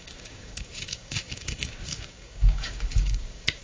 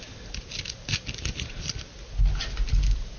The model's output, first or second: first